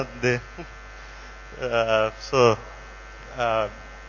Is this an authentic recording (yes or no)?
yes